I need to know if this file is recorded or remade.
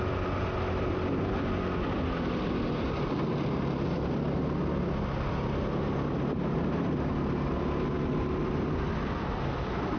recorded